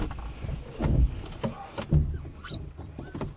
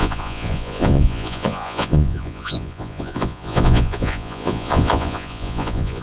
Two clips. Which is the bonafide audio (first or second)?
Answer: first